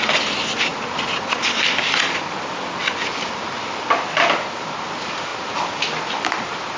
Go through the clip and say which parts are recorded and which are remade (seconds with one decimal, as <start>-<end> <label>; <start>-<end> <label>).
0.0-0.7 remade; 0.7-4.8 recorded; 4.8-5.3 remade; 5.3-6.2 recorded; 6.2-6.8 remade

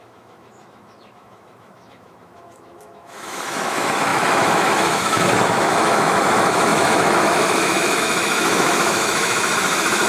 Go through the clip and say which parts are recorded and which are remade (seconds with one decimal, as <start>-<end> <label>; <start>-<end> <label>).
0.0-10.1 remade

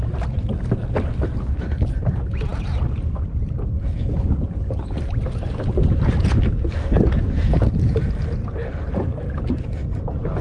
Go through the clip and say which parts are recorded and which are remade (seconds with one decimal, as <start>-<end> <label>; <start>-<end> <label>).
0.0-10.4 recorded

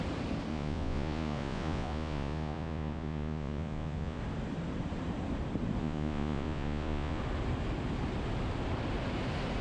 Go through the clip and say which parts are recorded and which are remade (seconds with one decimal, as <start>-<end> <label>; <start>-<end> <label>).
0.0-0.5 recorded; 0.5-4.2 remade; 4.2-5.8 recorded; 5.8-7.2 remade; 7.2-9.6 recorded

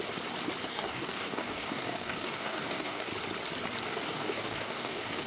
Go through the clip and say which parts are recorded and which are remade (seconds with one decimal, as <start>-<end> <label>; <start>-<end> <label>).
0.0-0.7 recorded; 0.7-3.1 remade; 3.1-3.9 recorded; 3.9-5.3 remade

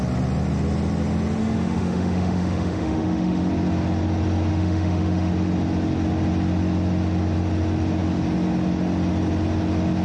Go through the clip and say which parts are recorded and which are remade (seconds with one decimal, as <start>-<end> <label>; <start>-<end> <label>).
0.0-1.4 recorded; 1.4-3.5 remade; 3.5-4.5 recorded; 4.5-5.3 remade; 5.3-10.0 recorded

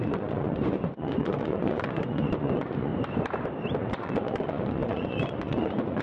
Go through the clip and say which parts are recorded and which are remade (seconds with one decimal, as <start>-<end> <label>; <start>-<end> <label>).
0.0-2.9 remade; 2.9-3.8 recorded; 3.8-6.0 remade